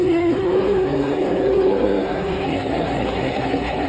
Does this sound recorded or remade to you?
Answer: remade